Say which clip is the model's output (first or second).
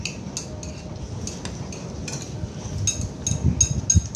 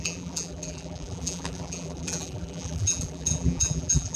second